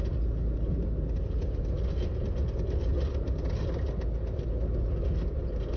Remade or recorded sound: recorded